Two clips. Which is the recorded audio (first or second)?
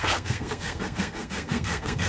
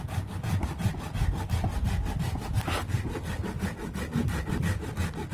second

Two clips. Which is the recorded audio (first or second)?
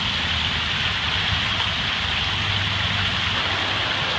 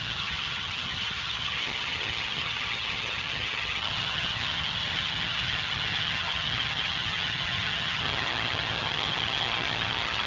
first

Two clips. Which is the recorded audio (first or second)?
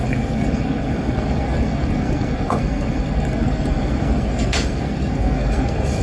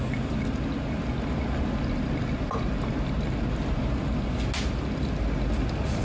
second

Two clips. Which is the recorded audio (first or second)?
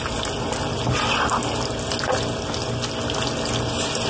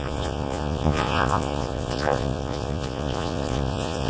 first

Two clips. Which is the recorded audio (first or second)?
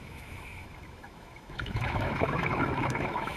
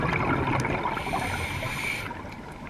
second